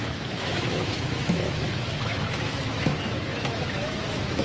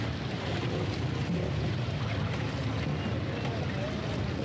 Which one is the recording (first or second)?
second